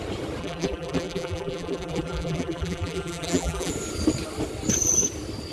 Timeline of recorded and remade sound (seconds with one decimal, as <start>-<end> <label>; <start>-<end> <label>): 0.0-0.4 recorded; 0.4-3.7 remade; 3.7-5.5 recorded